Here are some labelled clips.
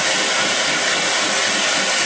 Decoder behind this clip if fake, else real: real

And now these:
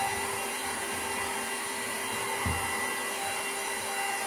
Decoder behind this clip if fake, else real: real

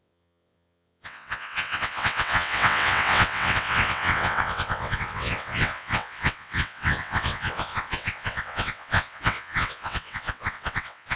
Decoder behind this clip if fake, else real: fake, vocoder, WaveNeXt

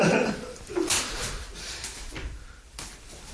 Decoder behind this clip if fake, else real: fake, vocoder, BigVGAN v2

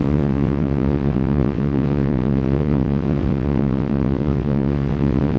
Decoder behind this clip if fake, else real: fake, vocoder, WaveNeXt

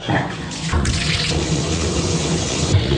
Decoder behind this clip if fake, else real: fake, vocoder, Vocos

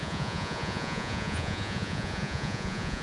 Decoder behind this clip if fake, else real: fake, vocoder, Vocos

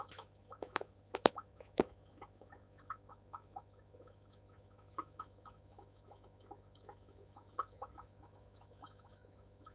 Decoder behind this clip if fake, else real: fake, autoencoder, DAC-VAE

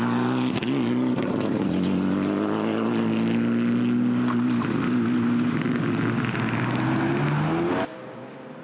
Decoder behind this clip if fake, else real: real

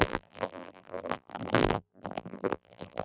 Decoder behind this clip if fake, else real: fake, vocoder, BigVGAN v2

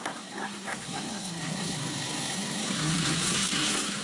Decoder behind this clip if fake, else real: fake, codec, SNAC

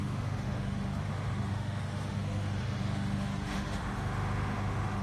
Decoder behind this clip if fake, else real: fake, autoencoder, DAC-VAE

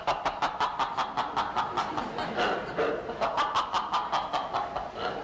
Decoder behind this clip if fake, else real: real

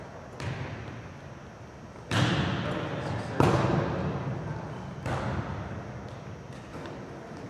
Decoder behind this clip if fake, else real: real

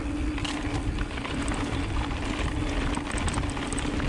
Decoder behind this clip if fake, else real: real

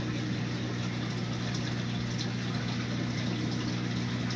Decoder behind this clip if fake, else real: real